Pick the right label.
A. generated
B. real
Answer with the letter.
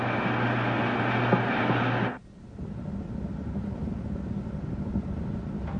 B